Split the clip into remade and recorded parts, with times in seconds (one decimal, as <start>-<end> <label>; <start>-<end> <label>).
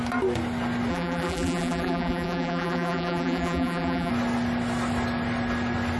0.0-0.9 recorded; 0.9-4.1 remade; 4.1-6.0 recorded